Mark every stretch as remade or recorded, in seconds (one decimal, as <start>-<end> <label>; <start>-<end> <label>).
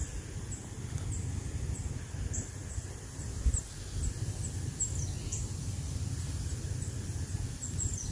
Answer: 0.0-1.3 remade; 1.3-2.6 recorded; 2.6-4.1 remade; 4.1-4.7 recorded; 4.7-6.2 remade; 6.2-8.1 recorded